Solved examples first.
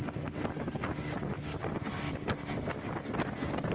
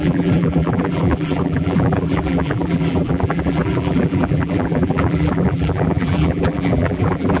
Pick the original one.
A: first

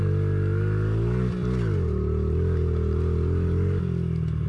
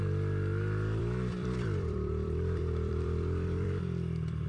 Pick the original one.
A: first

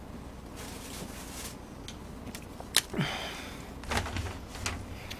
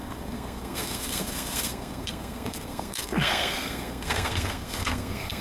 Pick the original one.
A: first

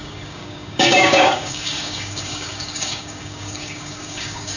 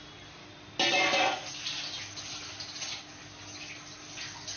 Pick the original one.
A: second